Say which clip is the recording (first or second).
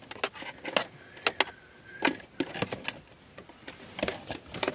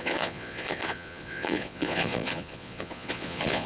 first